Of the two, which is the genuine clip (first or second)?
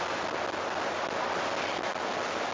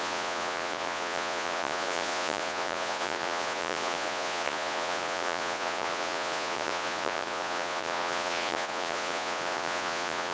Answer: first